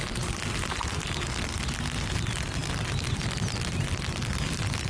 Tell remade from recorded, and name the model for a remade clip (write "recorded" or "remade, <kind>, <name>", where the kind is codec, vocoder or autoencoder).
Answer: recorded